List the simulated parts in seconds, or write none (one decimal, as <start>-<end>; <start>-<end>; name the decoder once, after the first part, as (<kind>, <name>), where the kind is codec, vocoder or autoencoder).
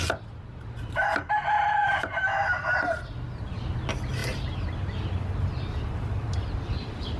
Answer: 1.8-3.1 (vocoder, BigVGAN v2)